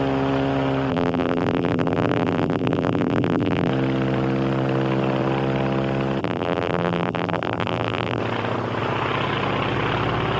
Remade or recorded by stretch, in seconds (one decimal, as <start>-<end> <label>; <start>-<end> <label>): 0.0-0.9 recorded; 0.9-3.7 remade; 3.7-6.2 recorded; 6.2-8.2 remade; 8.2-10.4 recorded

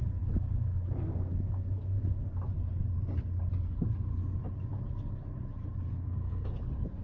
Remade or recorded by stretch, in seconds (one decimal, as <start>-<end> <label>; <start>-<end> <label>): 0.0-5.9 recorded; 5.9-6.6 remade; 6.6-7.0 recorded

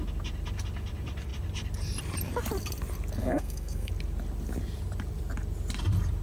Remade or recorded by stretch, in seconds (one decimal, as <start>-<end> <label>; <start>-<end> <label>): 0.0-3.2 recorded; 3.2-3.9 remade; 3.9-6.2 recorded

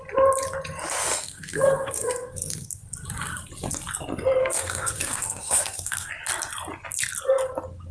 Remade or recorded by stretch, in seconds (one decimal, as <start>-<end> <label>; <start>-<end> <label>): 0.0-1.1 recorded; 1.1-2.7 remade; 2.7-4.4 recorded; 4.4-6.1 remade; 6.1-7.9 recorded